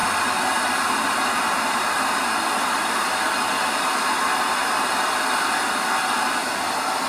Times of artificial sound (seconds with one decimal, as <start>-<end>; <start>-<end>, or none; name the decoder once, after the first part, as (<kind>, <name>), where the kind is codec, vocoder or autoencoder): 0.0-3.5 (vocoder, BigVGAN v2); 4.6-6.4